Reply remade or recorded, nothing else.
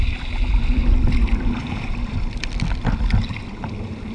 recorded